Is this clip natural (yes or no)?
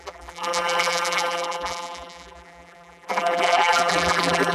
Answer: no